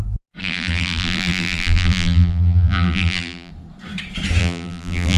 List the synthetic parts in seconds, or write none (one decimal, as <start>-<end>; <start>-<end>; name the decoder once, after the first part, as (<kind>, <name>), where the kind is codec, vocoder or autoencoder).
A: 0.4-3.5 (vocoder, BigVGAN v2); 4.4-5.2

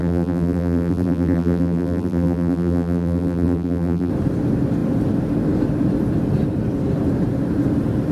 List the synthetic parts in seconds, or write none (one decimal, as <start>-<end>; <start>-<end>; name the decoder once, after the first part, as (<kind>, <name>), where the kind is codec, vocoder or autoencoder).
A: 0.0-4.1 (vocoder, BigVGAN v2)

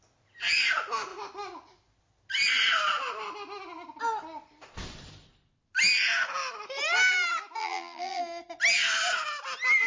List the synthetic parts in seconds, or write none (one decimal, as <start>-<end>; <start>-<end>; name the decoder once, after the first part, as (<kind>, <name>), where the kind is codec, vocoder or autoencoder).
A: 7.6-8.2 (vocoder, BigVGAN v2)

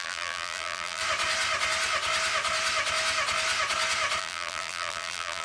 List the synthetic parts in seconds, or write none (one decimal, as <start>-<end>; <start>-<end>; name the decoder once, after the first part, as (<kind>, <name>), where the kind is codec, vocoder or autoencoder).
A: 0.0-1.0 (vocoder, BigVGAN v2); 4.2-5.4

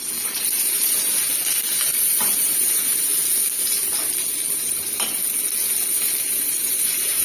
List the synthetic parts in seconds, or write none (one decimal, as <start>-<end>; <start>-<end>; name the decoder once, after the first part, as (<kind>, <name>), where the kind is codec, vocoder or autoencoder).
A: 0.0-1.3 (vocoder, BigVGAN v2); 2.0-3.1; 4.6-5.2; 6.2-7.2